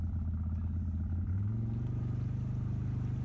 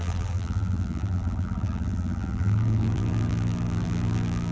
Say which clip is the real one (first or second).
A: first